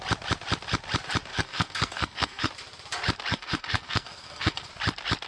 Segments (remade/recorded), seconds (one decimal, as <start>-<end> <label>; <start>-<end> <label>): 0.0-1.3 recorded; 1.3-2.5 remade; 2.5-3.3 recorded; 3.3-4.7 remade; 4.7-5.3 recorded